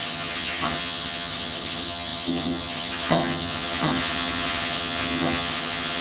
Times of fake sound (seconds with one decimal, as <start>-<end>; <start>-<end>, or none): 0.0-6.0